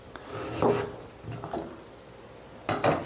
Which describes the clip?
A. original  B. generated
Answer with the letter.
A